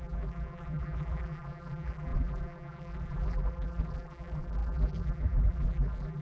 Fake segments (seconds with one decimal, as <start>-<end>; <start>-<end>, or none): 0.0-6.2